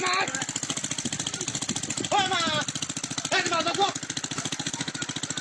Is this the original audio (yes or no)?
yes